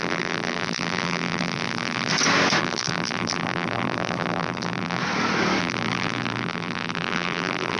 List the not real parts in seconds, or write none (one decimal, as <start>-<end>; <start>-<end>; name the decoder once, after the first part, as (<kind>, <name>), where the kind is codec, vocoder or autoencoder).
0.0-2.1 (vocoder, BigVGAN v2); 2.6-5.0; 5.6-7.8